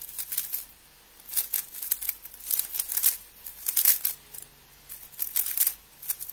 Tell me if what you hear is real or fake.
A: real